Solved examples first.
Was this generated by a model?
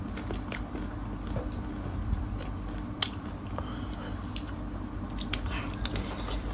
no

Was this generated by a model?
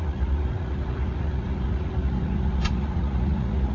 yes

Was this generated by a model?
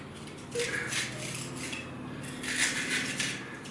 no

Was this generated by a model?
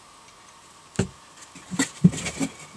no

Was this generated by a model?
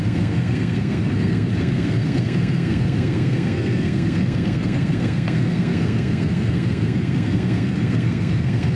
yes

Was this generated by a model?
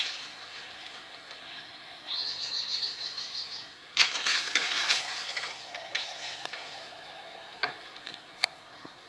yes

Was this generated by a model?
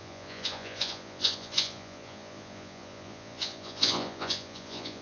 yes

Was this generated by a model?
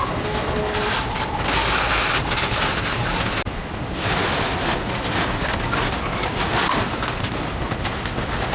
no